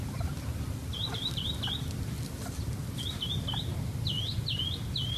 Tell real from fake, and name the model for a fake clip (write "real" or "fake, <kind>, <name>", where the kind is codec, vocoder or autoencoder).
real